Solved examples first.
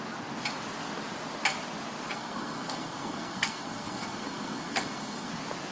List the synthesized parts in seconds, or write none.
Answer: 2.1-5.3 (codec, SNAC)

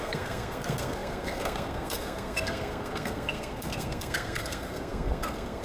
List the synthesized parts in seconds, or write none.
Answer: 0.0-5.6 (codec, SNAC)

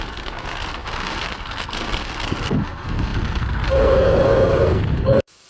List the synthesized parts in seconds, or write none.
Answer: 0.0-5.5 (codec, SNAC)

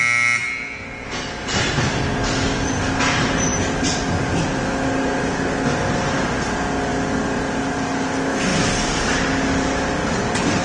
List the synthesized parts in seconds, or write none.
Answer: none

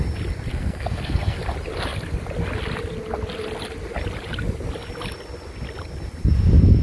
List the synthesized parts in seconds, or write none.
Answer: 0.5-1.4 (codec, SNAC)

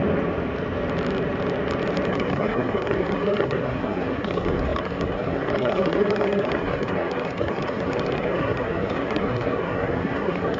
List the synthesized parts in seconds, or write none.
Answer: 2.1-10.6 (codec, SNAC)

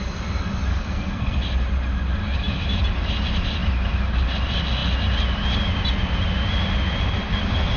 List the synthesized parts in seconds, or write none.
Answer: 0.7-1.4 (codec, SNAC)

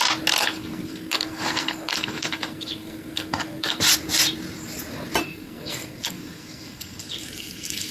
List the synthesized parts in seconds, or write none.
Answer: 0.4-3.8 (codec, SNAC); 5.2-7.9